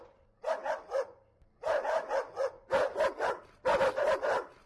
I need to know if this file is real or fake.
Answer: real